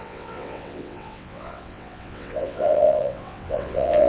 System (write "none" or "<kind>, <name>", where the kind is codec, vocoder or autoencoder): vocoder, WaveNeXt